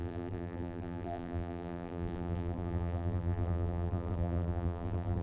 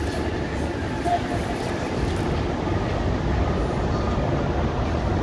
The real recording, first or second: second